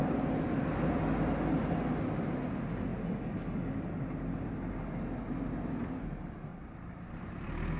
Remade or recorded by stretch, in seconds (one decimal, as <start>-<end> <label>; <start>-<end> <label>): 0.0-1.0 remade; 1.0-6.5 recorded; 6.5-7.3 remade; 7.3-7.8 recorded